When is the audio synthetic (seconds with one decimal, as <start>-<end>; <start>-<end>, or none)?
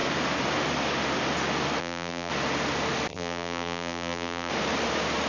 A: 1.8-2.3; 3.1-4.5